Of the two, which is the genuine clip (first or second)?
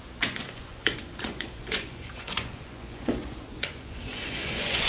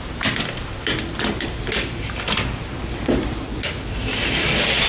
second